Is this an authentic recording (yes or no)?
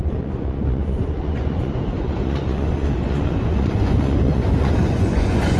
no